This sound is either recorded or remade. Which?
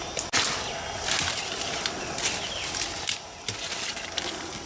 recorded